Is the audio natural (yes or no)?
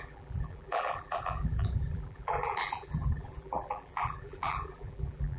no